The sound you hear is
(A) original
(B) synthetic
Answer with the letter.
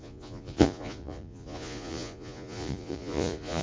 B